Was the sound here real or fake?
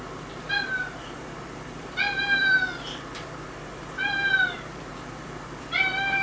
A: fake